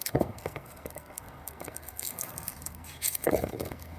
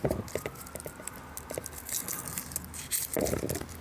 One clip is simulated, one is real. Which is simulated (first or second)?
first